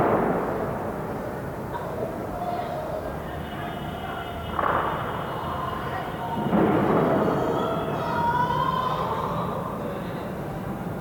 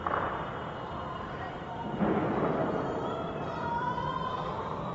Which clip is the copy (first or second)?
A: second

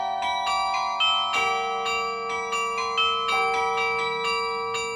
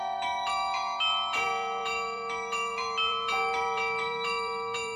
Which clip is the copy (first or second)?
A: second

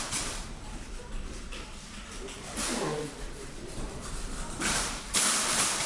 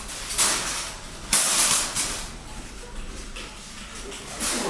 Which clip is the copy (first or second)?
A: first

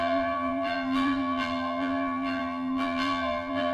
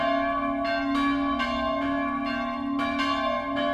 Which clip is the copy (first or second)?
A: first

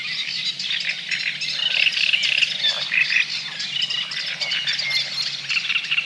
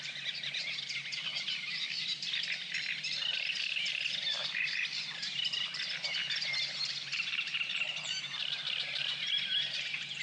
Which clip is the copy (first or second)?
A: second